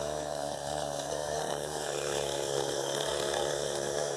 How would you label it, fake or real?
fake